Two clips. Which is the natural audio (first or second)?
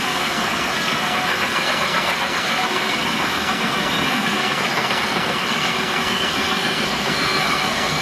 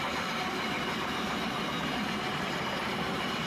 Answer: second